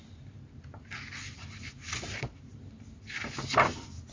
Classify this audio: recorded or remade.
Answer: recorded